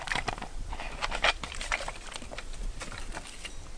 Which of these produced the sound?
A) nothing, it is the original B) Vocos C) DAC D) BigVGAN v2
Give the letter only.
A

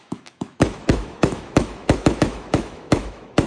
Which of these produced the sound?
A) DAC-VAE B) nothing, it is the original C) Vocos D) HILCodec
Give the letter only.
A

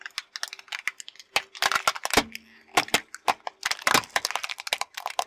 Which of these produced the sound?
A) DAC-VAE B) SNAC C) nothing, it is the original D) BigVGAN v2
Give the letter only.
C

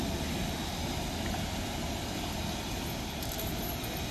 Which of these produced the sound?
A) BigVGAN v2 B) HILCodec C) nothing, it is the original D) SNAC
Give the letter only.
C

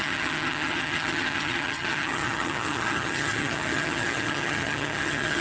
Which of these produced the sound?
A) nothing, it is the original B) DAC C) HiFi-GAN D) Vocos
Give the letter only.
C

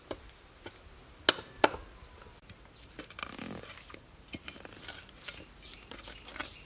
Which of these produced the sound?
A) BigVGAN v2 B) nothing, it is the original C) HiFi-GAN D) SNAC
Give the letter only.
B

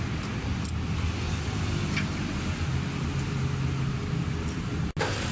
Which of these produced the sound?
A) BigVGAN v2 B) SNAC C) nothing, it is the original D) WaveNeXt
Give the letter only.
C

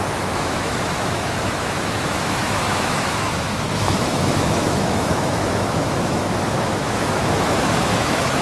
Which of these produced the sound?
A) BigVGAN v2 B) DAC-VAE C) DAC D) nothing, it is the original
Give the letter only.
B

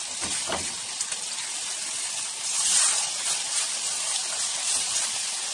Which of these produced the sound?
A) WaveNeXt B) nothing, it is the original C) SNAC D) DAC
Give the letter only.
B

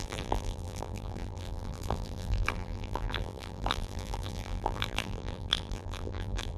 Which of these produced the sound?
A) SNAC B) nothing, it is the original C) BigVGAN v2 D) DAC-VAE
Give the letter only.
C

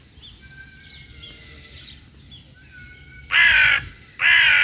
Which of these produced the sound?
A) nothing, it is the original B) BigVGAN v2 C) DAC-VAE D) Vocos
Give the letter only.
A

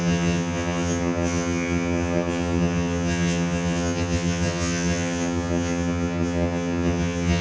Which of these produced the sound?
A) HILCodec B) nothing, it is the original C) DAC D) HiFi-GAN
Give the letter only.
D